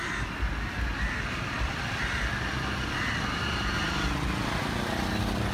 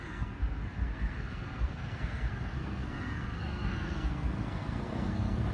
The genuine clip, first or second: first